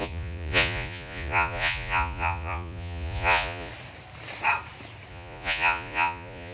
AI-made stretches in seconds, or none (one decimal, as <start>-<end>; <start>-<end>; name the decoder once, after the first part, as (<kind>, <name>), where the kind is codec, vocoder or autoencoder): 0.0-3.7 (vocoder, Vocos); 5.1-6.5